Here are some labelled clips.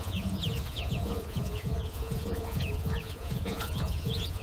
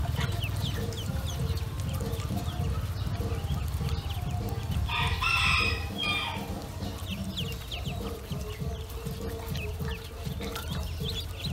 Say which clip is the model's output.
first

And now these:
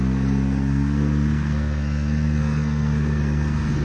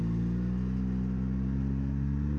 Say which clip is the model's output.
first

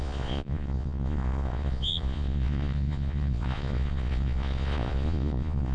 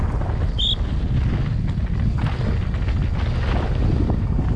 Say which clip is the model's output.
first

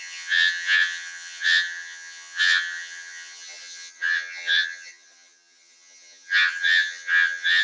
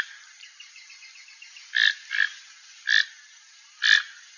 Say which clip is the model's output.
first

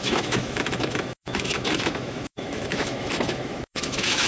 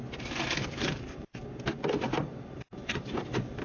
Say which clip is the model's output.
first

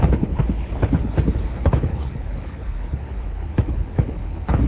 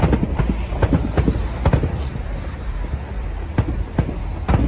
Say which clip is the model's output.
first